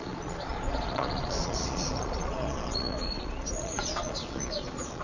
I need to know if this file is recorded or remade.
remade